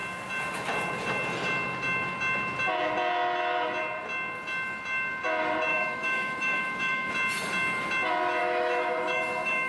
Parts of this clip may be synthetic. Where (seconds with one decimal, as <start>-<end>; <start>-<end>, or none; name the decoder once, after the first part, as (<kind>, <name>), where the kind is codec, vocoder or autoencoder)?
5.7-7.1 (autoencoder, DAC-VAE); 8.4-9.7